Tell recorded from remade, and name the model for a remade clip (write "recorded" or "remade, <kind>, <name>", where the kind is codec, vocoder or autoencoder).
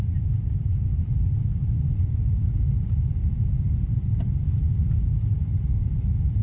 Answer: recorded